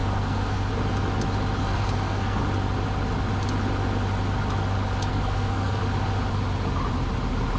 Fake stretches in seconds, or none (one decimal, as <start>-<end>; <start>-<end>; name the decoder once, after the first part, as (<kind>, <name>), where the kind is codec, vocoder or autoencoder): 0.0-0.7 (codec, SNAC); 1.6-2.4; 5.1-5.8